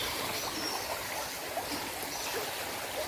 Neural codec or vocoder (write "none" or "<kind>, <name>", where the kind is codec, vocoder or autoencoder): none